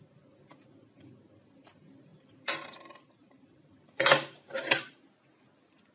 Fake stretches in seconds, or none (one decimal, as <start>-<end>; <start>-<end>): 2.1-5.0